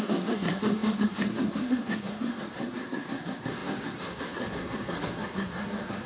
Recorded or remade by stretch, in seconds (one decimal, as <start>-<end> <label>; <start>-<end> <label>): 0.0-6.1 remade